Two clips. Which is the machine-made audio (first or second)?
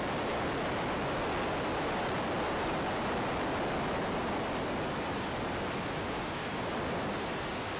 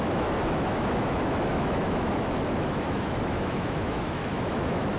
second